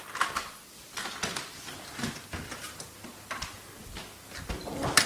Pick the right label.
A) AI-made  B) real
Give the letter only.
B